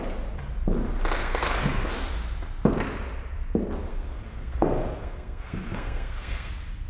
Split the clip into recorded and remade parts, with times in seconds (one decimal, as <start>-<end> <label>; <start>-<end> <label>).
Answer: 0.0-1.2 recorded; 1.2-1.8 remade; 1.8-3.9 recorded; 3.9-6.5 remade; 6.5-6.9 recorded